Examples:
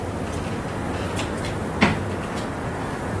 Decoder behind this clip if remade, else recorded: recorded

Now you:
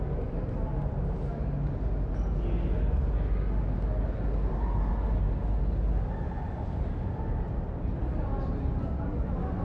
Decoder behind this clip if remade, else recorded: recorded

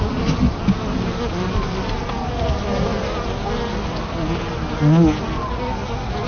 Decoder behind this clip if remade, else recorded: recorded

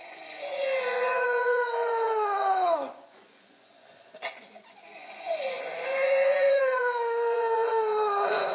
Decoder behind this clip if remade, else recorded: remade, vocoder, Vocos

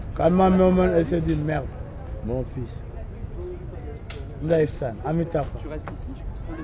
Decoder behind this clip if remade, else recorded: recorded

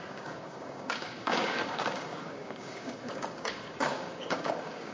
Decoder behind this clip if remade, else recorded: remade, codec, DAC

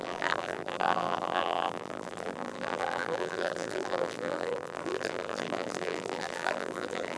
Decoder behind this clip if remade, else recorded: remade, vocoder, BigVGAN v2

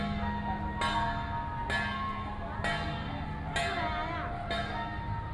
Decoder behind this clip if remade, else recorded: recorded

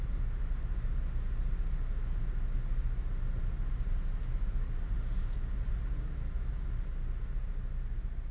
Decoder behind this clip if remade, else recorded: recorded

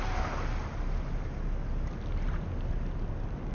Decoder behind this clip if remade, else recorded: recorded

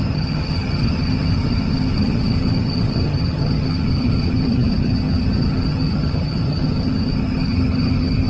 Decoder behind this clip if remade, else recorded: remade, vocoder, HiFi-GAN